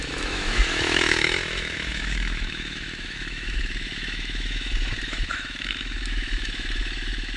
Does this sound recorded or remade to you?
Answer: remade